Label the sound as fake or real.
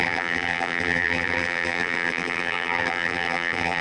fake